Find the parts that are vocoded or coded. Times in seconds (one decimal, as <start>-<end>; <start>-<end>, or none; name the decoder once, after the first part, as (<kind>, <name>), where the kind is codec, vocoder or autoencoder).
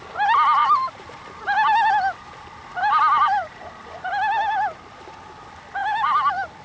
0.6-1.9 (vocoder, BigVGAN v2); 2.6-4.6; 5.8-6.6